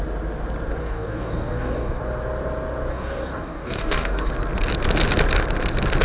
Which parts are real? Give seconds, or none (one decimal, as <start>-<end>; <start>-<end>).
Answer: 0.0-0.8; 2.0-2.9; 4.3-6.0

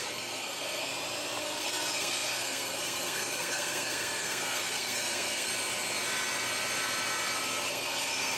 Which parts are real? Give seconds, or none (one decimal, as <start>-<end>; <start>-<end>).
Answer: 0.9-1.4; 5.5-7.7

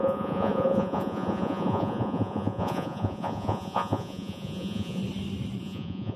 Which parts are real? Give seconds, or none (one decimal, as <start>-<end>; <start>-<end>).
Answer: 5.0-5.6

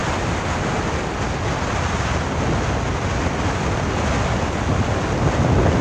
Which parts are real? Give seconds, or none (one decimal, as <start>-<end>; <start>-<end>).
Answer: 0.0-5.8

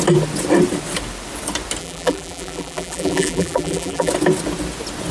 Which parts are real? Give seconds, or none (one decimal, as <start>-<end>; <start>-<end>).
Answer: 0.0-1.8; 4.1-5.1

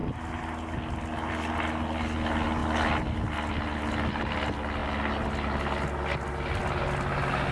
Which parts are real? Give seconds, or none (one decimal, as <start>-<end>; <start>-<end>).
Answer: 0.0-7.5

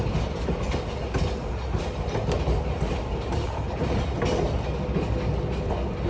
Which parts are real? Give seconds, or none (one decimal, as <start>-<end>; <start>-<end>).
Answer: 0.0-6.1